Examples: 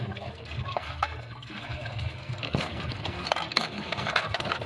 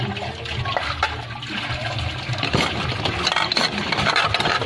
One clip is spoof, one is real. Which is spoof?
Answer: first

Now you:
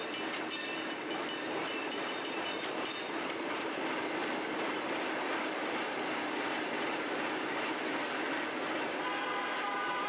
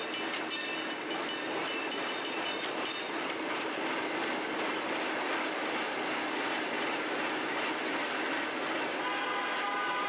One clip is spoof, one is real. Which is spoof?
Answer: first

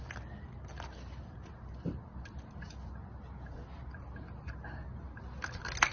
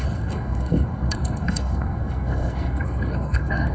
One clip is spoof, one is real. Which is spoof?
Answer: second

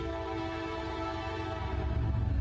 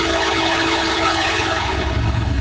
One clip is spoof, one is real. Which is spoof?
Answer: second